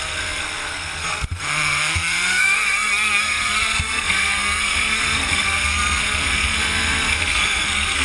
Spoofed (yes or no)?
yes